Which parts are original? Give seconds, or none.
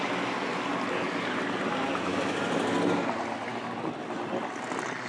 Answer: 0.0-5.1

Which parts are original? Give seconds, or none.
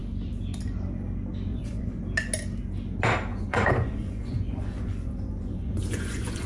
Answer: 0.0-1.5; 2.0-3.3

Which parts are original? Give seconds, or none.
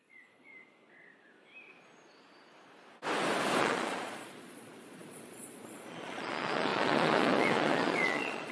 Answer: 0.5-3.6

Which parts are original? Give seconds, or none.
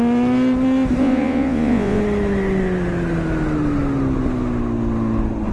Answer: 0.0-1.0; 2.0-5.5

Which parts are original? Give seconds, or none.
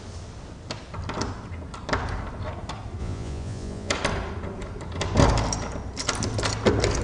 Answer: 0.0-3.0; 3.9-7.0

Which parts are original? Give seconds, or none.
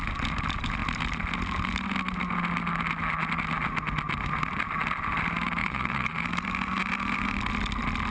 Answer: 0.0-5.6; 6.2-8.1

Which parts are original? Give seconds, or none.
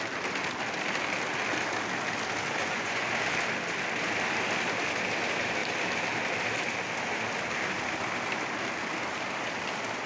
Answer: 0.0-2.6; 3.1-10.1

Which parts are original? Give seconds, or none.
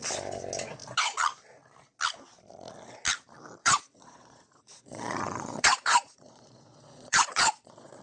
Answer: 0.0-3.6